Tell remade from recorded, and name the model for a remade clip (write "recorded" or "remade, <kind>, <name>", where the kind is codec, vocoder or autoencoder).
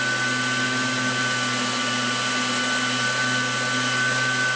recorded